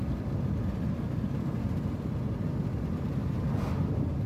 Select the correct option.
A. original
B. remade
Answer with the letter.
A